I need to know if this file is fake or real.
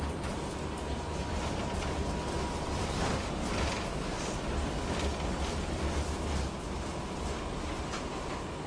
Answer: real